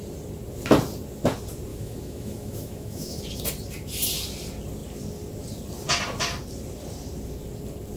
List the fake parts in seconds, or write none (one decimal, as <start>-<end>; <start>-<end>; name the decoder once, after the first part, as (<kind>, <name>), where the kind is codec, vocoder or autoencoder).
1.7-3.2 (autoencoder, DAC-VAE)